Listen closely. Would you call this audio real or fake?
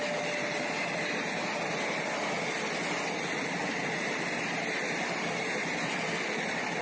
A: real